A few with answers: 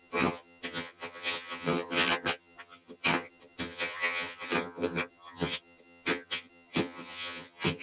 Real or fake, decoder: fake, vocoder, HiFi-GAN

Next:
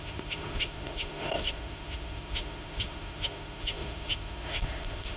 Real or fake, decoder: fake, autoencoder, DAC-VAE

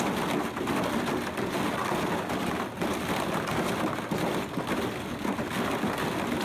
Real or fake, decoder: real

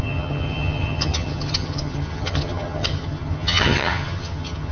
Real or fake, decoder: fake, vocoder, HiFi-GAN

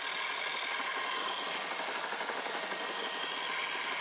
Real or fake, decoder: real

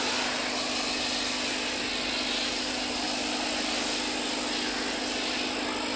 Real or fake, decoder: real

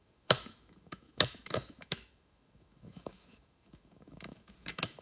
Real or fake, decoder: fake, autoencoder, DAC-VAE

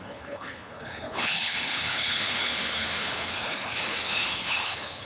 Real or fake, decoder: fake, codec, HILCodec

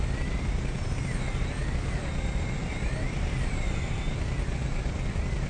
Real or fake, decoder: real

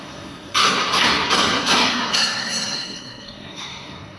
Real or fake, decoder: fake, codec, SNAC